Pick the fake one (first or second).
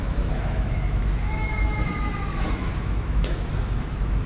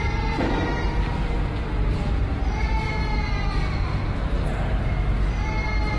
first